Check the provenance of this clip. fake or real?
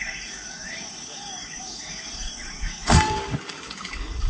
fake